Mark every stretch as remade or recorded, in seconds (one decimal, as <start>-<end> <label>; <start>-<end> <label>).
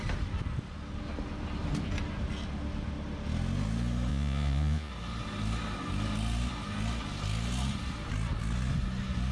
0.0-4.1 recorded; 4.1-4.9 remade; 4.9-9.3 recorded